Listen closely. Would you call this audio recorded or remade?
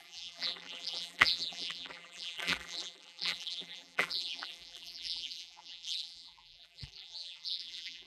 remade